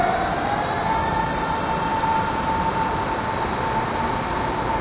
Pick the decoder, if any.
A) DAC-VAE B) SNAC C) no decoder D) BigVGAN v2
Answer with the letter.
C